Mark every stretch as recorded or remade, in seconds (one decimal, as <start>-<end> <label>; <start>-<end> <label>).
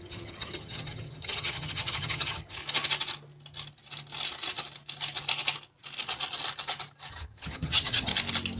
0.0-2.6 remade; 2.6-7.1 recorded; 7.1-8.1 remade; 8.1-8.6 recorded